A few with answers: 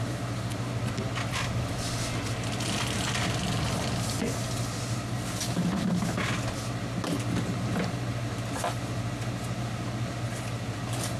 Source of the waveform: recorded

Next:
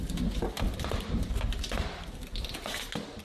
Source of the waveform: recorded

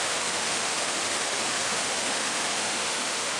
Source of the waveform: remade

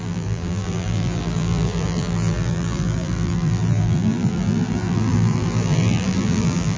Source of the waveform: remade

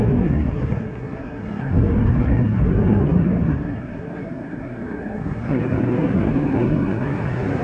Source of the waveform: remade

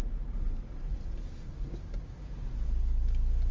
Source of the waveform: recorded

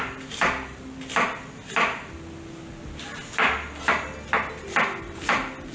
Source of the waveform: recorded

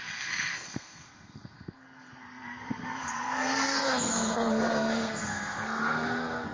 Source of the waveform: remade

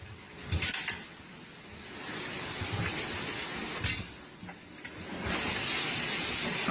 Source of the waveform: recorded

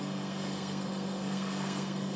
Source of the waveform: remade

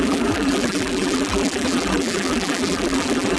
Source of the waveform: remade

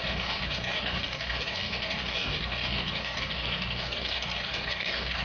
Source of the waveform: remade